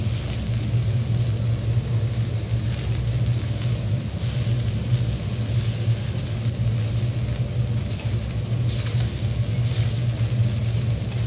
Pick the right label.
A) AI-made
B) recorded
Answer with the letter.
B